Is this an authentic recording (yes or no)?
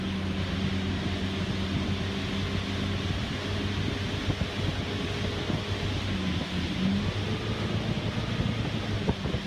yes